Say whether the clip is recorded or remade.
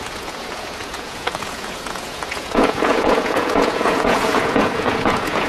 remade